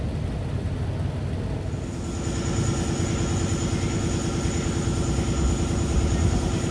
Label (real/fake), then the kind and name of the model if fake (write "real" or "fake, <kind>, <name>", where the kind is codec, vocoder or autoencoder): real